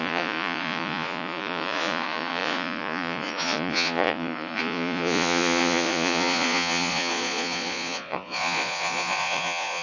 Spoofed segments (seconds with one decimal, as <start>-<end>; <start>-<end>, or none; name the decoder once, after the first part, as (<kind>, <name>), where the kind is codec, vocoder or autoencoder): 0.0-9.8 (vocoder, Vocos)